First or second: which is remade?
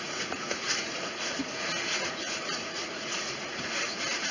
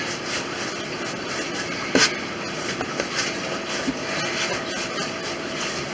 first